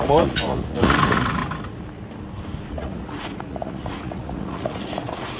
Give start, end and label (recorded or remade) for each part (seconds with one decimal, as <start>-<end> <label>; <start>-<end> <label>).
0.0-1.4 remade; 1.4-2.7 recorded; 2.7-5.4 remade